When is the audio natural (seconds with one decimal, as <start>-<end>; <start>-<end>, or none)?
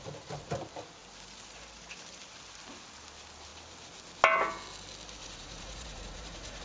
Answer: 0.0-5.2